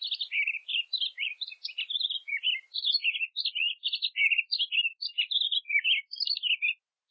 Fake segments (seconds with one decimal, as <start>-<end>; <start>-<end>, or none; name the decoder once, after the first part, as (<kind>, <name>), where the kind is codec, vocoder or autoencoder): 0.6-2.4 (vocoder, BigVGAN v2); 5.2-5.9